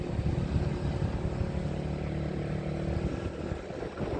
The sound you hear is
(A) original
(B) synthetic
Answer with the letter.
A